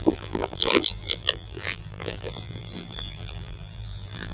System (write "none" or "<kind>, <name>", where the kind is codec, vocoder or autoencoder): vocoder, BigVGAN v2